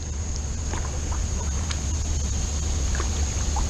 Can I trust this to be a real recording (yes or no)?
yes